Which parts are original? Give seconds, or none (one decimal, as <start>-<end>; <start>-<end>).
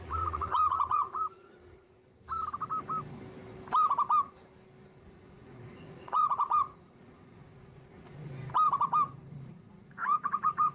2.0-5.0; 8.4-9.3